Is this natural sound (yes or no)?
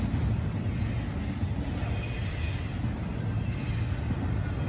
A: yes